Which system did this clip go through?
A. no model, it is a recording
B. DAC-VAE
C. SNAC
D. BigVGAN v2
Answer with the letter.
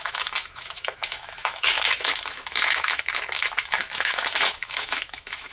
B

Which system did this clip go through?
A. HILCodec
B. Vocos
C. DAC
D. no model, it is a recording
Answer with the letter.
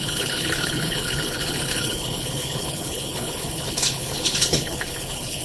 A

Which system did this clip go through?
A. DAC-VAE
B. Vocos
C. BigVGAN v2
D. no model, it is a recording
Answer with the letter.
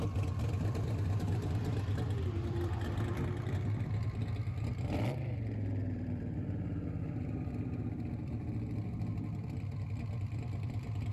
C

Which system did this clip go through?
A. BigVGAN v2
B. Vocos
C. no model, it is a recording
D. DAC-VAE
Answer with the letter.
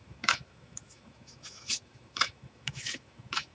D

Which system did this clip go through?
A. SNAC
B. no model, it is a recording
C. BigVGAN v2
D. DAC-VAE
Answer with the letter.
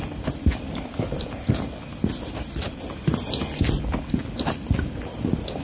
C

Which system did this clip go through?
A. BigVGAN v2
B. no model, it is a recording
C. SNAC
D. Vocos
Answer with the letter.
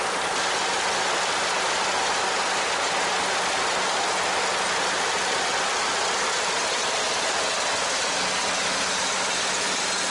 B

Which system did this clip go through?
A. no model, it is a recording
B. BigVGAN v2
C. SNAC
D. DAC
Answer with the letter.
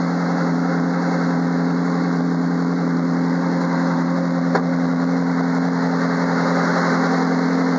A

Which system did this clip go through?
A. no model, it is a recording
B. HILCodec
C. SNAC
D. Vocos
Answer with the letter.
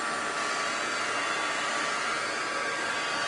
A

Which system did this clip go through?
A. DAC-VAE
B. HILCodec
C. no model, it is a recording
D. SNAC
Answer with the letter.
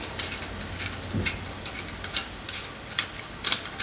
C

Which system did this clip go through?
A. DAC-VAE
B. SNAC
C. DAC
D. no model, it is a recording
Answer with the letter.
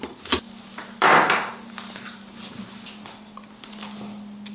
D